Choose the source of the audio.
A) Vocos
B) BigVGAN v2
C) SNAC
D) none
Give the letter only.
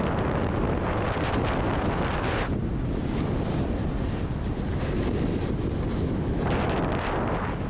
D